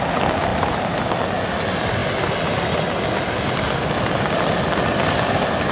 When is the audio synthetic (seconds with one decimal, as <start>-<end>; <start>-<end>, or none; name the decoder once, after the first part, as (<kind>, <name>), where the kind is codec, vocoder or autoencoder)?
0.5-1.1 (vocoder, BigVGAN v2)